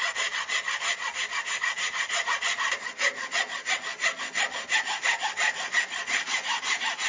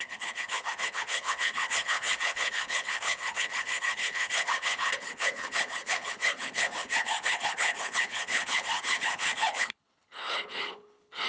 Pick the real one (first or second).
first